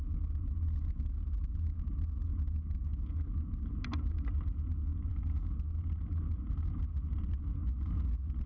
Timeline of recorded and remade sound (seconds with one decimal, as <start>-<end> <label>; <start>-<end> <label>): 0.0-8.5 recorded